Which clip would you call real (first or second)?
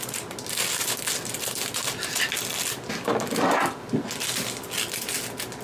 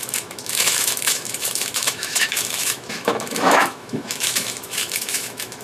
first